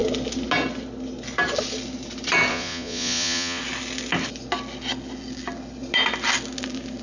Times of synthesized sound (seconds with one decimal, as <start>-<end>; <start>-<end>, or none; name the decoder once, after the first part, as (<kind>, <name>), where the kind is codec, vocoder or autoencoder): 2.5-3.6 (vocoder, Vocos)